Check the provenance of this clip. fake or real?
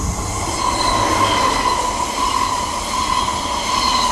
real